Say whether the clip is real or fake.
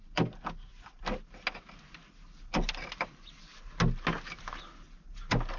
real